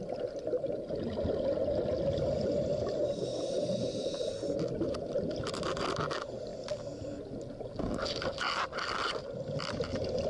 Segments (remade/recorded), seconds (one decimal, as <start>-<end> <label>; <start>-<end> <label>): 0.0-10.3 recorded